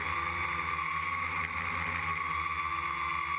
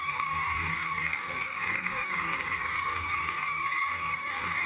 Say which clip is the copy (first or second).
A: second